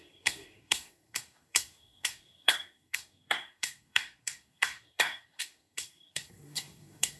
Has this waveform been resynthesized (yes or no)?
yes